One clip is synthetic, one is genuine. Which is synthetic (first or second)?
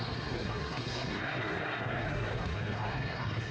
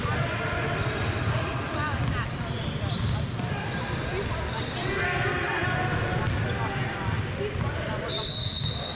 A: first